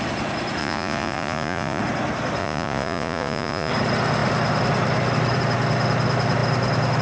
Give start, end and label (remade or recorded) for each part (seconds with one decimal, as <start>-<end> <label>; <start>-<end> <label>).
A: 0.0-0.6 recorded; 0.6-1.8 remade; 1.8-2.4 recorded; 2.4-3.7 remade; 3.7-7.0 recorded